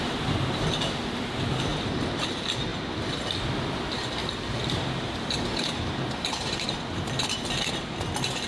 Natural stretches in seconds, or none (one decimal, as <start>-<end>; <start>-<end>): 0.0-1.7; 2.3-2.7; 3.3-4.2; 7.7-8.5